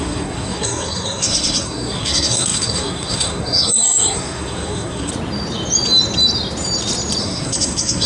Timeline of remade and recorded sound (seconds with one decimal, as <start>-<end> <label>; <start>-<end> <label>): 0.0-5.1 remade; 5.1-7.2 recorded; 7.2-8.1 remade